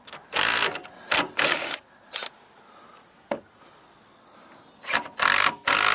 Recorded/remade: recorded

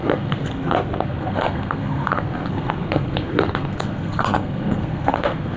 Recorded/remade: remade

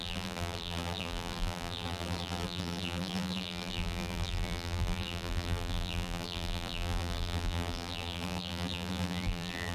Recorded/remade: remade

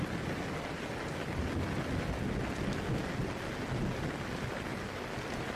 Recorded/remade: recorded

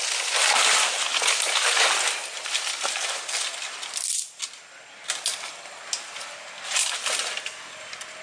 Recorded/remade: recorded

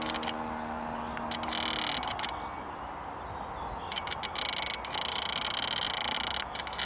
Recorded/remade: recorded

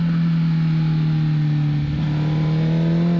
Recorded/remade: recorded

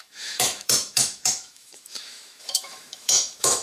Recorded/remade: remade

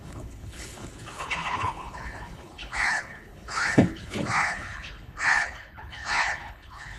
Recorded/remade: remade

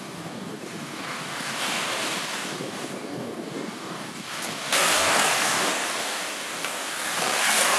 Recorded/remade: remade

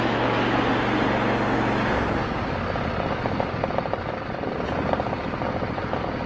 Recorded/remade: recorded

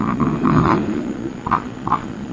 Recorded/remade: remade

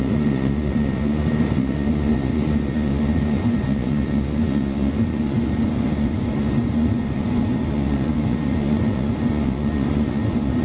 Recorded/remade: remade